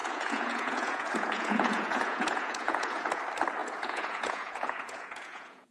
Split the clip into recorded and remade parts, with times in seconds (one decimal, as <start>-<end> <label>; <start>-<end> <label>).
0.0-3.2 remade; 3.2-3.6 recorded; 3.6-5.7 remade